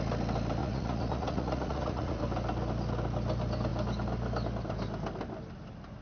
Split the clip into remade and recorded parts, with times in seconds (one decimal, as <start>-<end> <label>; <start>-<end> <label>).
0.0-0.6 recorded; 0.6-2.2 remade; 2.2-6.0 recorded